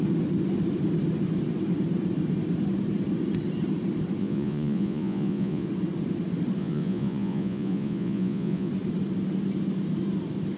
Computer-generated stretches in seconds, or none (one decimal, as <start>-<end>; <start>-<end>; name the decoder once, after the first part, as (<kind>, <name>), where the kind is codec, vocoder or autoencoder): 4.2-5.7 (vocoder, Vocos); 6.6-8.7